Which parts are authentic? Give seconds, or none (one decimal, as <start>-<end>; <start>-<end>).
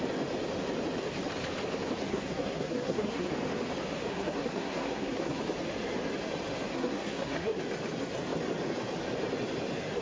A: 0.0-2.1; 3.3-4.1; 5.4-6.7; 7.6-10.0